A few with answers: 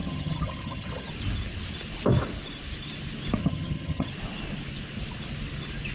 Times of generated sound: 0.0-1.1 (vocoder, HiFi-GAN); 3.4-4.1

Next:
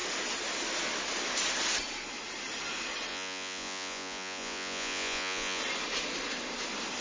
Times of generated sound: 3.1-5.6 (vocoder, Vocos)